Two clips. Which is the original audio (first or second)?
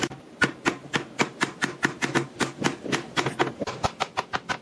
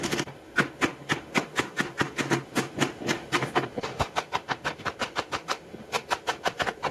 first